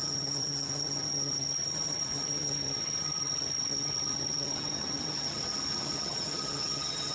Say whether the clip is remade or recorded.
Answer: remade